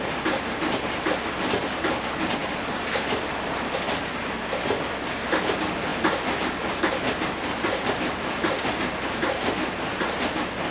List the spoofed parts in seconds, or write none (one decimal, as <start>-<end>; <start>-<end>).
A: none